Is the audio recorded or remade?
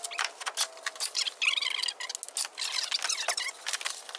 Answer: recorded